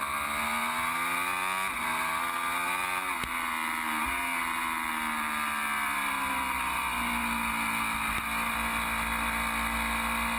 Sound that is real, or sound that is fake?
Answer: real